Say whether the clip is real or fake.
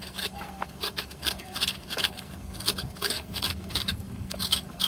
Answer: fake